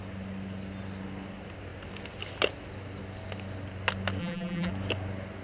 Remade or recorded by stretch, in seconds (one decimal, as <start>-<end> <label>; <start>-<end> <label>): 0.0-4.2 recorded; 4.2-4.7 remade; 4.7-5.4 recorded